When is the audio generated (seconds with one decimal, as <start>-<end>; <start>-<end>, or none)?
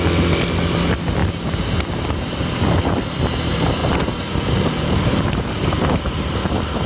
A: none